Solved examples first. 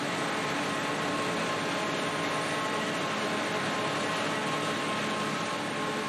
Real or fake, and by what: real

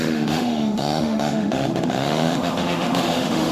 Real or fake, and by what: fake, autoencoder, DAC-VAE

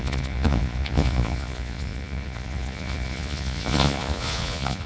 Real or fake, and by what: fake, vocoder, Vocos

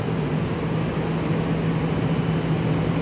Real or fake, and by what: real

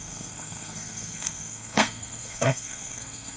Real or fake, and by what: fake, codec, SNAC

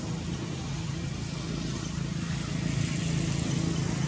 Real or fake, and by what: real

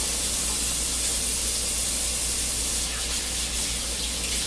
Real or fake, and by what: real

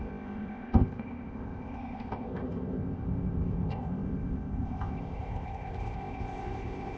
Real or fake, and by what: fake, codec, ZipCodec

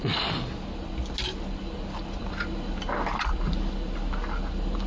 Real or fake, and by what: real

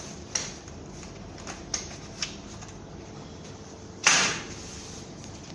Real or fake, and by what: real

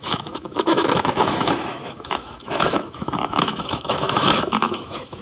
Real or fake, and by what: fake, autoencoder, DAC-VAE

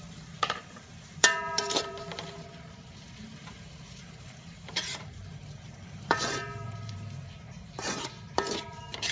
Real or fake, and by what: fake, vocoder, BigVGAN v2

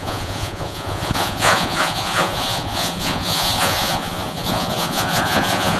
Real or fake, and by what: fake, vocoder, Vocos